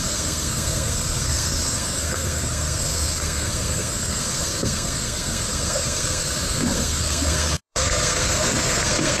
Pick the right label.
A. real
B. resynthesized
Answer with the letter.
B